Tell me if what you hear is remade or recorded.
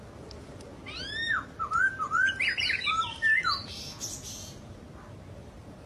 recorded